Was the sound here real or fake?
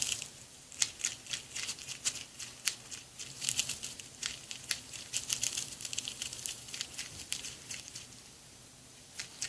fake